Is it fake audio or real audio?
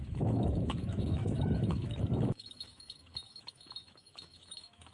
fake